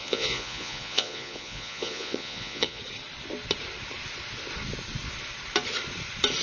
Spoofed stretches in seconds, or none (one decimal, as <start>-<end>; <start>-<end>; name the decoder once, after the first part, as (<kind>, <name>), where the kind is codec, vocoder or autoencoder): 0.0-2.8 (vocoder, Vocos)

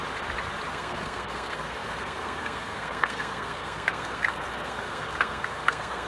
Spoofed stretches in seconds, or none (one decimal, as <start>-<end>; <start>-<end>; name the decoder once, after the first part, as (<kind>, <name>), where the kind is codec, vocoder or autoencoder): 0.7-6.1 (codec, SNAC)

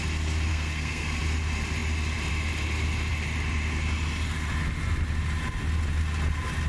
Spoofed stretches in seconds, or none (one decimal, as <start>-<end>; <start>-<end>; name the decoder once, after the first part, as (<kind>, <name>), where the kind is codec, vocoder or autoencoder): 0.5-1.2 (codec, SNAC)

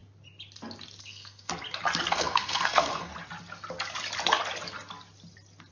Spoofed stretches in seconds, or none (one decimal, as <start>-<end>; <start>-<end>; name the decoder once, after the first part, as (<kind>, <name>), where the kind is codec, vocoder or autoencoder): 1.0-1.5 (codec, SNAC); 2.1-3.1

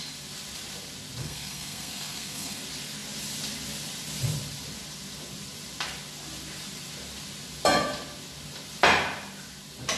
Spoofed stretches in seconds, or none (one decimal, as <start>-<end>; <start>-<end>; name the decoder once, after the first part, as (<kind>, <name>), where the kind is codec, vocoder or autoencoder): 1.2-2.6 (codec, SNAC)

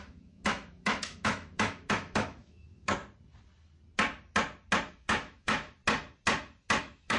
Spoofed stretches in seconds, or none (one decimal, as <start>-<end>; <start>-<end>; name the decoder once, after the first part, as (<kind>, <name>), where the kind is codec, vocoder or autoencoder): 0.0-3.0 (autoencoder, DAC-VAE); 4.9-5.8; 6.8-7.2

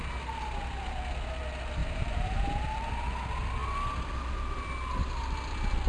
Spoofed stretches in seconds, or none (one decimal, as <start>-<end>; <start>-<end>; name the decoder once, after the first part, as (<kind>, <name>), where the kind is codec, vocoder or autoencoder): 1.8-2.9 (vocoder, BigVGAN v2)

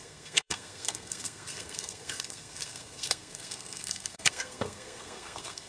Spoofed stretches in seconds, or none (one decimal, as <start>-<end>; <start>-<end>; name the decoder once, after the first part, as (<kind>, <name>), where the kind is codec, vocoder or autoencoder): 0.0-5.7 (codec, SNAC)